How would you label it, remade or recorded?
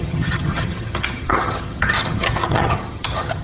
remade